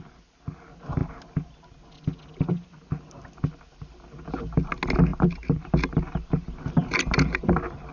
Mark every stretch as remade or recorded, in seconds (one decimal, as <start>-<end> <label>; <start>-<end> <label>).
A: 0.0-7.9 recorded